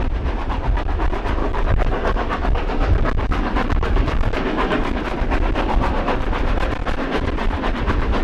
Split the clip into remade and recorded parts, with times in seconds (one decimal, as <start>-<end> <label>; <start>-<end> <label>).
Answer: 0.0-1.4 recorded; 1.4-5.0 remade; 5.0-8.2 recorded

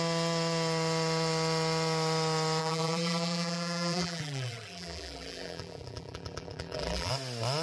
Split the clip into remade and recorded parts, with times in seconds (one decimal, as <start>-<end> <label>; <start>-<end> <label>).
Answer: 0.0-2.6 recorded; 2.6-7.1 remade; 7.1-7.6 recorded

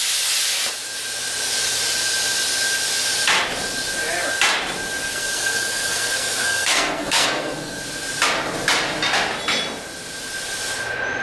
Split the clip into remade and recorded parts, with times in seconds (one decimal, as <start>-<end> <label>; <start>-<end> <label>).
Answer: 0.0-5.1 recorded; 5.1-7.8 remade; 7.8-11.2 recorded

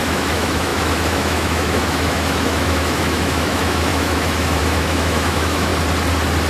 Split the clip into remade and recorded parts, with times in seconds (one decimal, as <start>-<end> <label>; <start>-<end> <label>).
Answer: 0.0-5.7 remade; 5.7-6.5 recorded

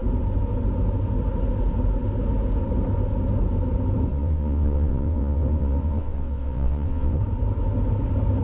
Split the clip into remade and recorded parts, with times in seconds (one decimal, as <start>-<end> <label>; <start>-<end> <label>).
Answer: 0.0-4.1 recorded; 4.1-7.2 remade; 7.2-8.4 recorded